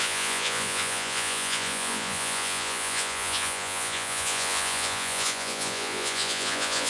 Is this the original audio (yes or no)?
no